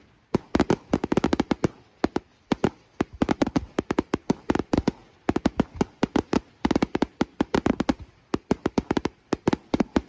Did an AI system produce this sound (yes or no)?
no